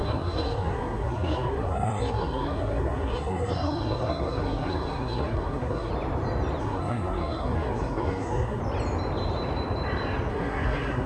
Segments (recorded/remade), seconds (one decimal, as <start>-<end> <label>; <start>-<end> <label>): 0.0-5.9 remade; 5.9-6.6 recorded; 6.6-8.6 remade; 8.6-10.3 recorded; 10.3-11.1 remade